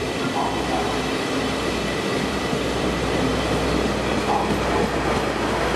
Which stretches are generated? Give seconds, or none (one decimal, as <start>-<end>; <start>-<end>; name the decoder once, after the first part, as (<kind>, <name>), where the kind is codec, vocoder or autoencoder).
0.0-3.3 (vocoder, BigVGAN v2)